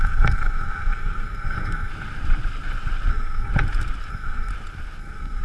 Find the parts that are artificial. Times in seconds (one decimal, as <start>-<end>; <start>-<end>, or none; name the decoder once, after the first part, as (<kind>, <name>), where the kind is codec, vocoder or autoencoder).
0.0-1.9 (codec, SNAC); 3.1-3.5; 4.1-4.5; 5.0-5.4